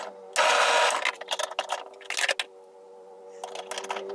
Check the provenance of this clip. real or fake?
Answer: real